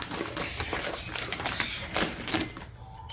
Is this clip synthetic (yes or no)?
no